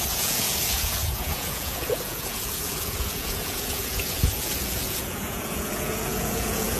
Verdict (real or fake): fake